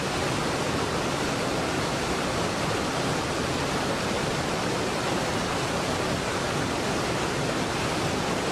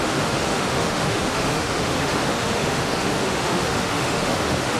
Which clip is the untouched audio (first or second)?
first